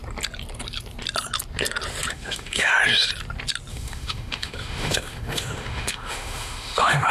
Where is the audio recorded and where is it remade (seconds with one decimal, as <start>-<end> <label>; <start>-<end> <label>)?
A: 0.0-2.1 recorded; 2.1-2.7 remade; 2.7-3.7 recorded; 3.7-7.1 remade